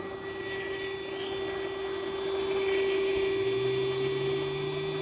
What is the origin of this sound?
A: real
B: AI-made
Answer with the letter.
A